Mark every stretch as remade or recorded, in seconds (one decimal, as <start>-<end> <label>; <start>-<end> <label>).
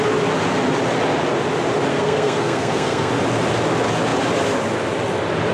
0.0-1.9 recorded; 1.9-3.1 remade; 3.1-5.5 recorded